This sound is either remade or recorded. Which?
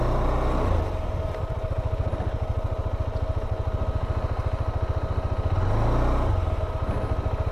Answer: recorded